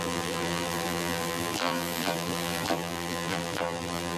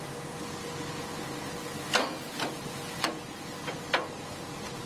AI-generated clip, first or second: first